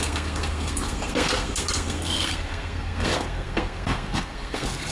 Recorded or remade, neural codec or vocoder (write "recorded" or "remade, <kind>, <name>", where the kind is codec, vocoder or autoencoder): remade, codec, SNAC